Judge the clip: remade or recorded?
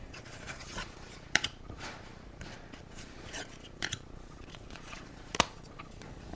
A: remade